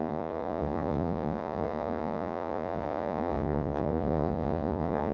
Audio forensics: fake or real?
fake